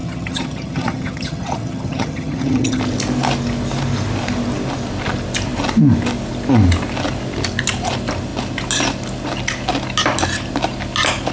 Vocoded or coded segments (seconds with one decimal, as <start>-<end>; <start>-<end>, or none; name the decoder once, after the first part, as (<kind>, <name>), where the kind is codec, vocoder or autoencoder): 0.0-2.8 (vocoder, HiFi-GAN)